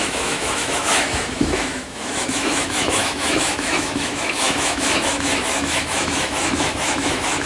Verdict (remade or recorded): remade